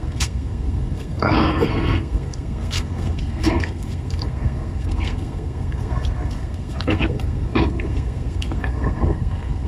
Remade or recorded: remade